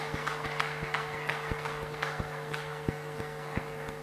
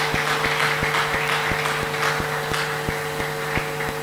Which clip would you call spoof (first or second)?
first